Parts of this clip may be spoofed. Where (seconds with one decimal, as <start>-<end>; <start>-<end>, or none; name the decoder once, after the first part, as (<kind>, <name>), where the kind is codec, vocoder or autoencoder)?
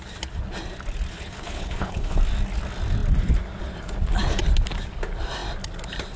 1.1-2.2 (codec, HILCodec)